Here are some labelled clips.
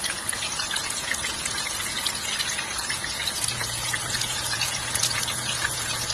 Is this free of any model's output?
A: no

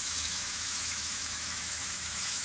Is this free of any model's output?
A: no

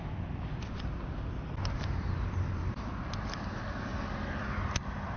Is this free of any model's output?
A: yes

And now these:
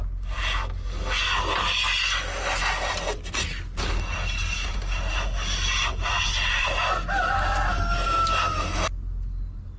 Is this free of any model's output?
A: yes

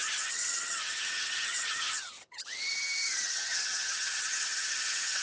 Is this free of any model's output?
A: no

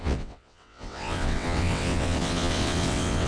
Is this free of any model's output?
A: no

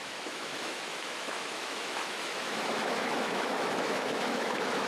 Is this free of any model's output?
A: no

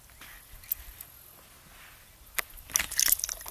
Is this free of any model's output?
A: yes